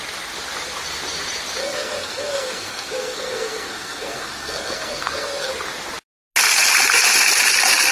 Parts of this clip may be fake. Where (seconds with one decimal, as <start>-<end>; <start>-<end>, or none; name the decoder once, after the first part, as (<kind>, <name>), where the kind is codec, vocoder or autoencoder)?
1.6-5.5 (codec, SNAC)